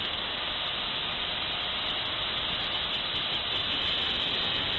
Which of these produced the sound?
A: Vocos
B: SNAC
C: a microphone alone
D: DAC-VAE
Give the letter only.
C